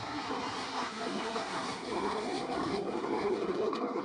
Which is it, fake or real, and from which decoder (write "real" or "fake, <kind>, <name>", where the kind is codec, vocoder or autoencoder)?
fake, codec, SNAC